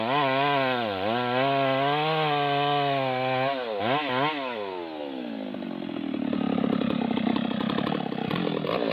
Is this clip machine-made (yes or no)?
no